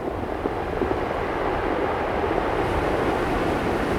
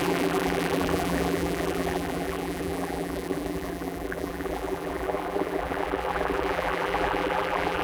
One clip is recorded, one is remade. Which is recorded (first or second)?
first